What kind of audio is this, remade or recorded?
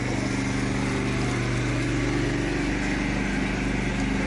recorded